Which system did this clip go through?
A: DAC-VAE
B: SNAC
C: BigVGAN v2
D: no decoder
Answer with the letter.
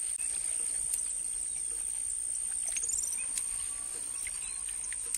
D